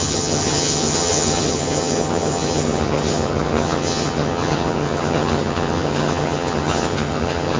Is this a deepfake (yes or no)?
yes